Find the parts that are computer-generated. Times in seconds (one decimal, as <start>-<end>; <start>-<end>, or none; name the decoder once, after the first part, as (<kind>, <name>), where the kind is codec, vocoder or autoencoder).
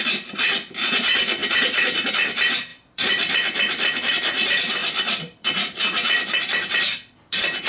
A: 1.4-2.1 (vocoder, BigVGAN v2); 2.7-4.1; 4.8-6.8